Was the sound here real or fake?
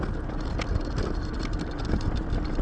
real